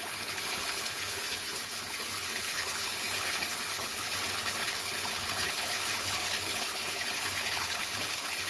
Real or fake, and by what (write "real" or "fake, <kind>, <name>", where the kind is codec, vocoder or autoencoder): fake, codec, HILCodec